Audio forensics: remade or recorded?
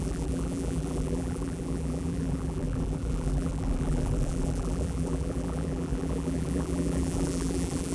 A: remade